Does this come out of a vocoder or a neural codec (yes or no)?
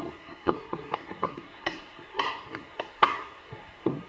yes